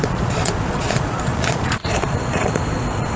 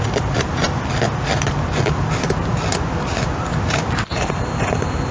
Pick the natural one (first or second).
second